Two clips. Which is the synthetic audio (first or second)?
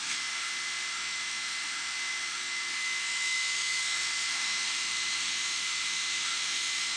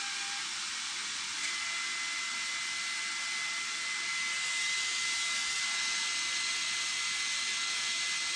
first